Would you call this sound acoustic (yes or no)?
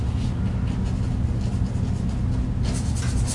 yes